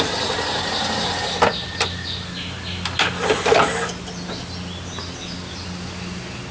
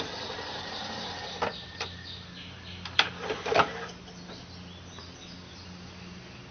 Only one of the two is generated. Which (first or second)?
second